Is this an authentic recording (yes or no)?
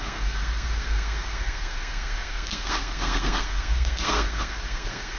no